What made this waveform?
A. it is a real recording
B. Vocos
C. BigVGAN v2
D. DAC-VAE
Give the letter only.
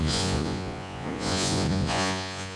B